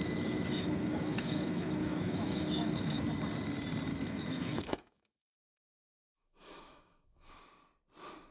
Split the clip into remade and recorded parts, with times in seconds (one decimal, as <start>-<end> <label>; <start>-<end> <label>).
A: 0.0-3.1 remade; 3.1-3.9 recorded; 3.9-7.3 remade; 7.3-8.3 recorded